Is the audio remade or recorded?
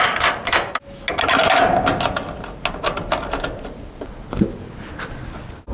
recorded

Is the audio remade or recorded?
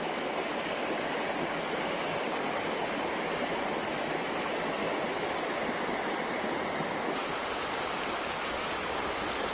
recorded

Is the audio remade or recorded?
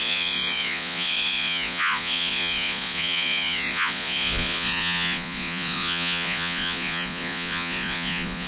remade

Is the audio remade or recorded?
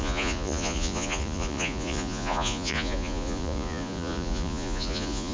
remade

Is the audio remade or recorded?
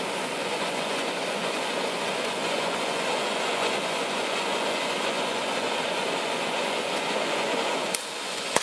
remade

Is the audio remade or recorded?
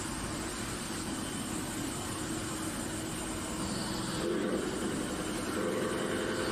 recorded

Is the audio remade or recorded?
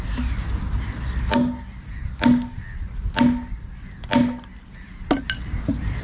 recorded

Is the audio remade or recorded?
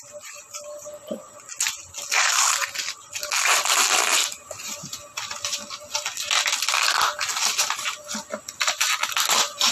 recorded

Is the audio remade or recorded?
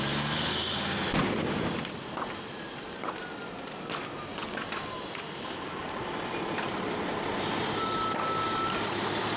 recorded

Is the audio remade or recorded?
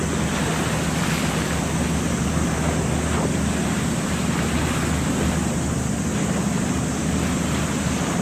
recorded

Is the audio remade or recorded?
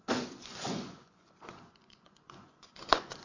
remade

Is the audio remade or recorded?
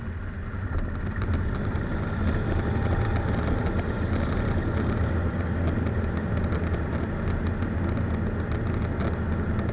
recorded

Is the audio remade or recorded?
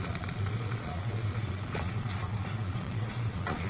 remade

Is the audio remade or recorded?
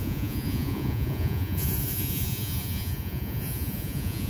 remade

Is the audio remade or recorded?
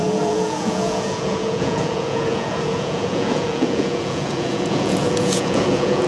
remade